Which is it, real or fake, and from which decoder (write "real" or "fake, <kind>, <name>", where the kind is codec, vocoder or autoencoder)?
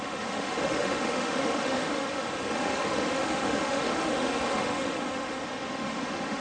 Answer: fake, autoencoder, DAC-VAE